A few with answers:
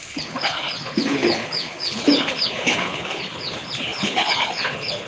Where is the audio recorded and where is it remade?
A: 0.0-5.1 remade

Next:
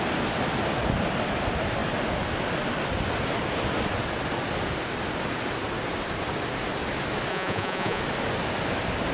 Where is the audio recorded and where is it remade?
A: 0.0-7.3 recorded; 7.3-8.0 remade; 8.0-9.1 recorded

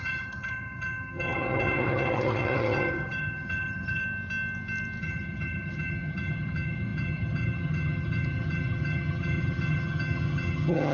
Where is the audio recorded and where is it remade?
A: 0.0-4.0 remade; 4.0-5.0 recorded; 5.0-10.9 remade

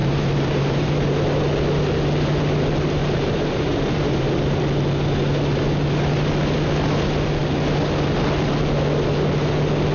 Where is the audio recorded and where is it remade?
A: 0.0-1.2 remade; 1.2-3.0 recorded; 3.0-4.6 remade; 4.6-9.9 recorded

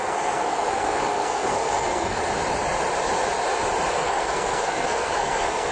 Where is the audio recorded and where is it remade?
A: 0.0-2.2 remade; 2.2-3.9 recorded; 3.9-5.7 remade